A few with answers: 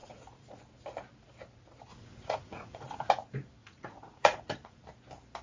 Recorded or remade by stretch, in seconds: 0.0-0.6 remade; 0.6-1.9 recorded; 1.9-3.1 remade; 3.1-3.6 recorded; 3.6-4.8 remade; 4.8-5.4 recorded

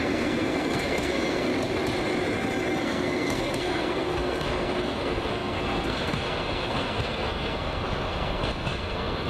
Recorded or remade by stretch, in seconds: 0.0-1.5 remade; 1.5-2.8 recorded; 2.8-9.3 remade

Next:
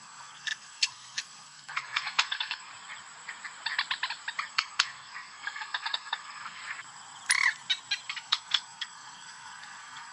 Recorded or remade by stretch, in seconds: 0.0-2.7 remade; 2.7-4.5 recorded; 4.5-6.6 remade; 6.6-8.1 recorded; 8.1-10.1 remade

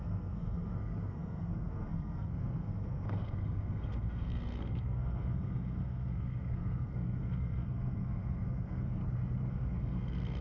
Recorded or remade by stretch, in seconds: 0.0-9.0 remade; 9.0-9.5 recorded; 9.5-10.4 remade

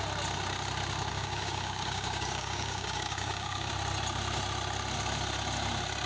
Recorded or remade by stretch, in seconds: 0.0-1.1 recorded; 1.1-3.7 remade; 3.7-6.1 recorded

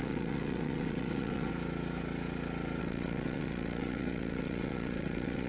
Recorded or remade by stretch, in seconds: 0.0-1.5 remade; 1.5-2.8 recorded; 2.8-5.5 remade

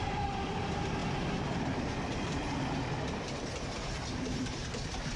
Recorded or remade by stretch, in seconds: 0.0-1.0 remade; 1.0-4.1 recorded; 4.1-5.2 remade